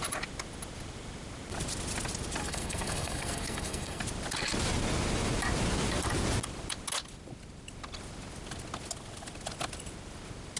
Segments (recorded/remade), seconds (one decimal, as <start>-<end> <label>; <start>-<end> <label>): 0.0-2.4 recorded; 2.4-4.0 remade; 4.0-10.6 recorded